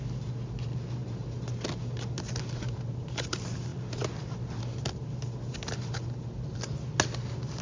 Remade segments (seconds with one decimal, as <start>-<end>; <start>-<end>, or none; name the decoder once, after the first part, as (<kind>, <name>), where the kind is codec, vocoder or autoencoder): none